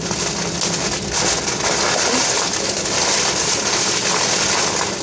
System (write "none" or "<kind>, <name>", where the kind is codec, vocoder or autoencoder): none